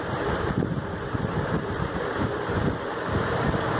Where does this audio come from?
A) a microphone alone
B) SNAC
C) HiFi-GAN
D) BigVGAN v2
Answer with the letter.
D